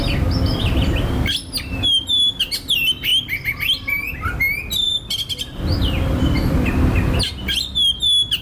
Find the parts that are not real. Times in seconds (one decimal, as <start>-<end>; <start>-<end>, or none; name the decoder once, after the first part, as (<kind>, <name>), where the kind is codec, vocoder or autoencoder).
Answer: none